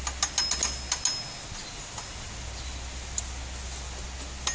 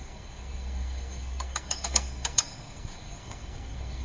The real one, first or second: first